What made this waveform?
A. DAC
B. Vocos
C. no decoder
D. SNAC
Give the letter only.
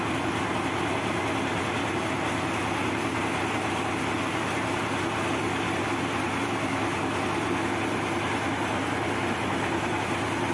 C